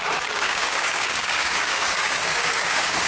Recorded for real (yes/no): no